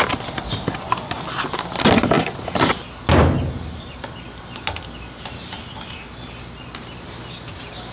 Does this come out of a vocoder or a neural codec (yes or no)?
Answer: no